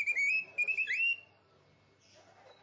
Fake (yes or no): no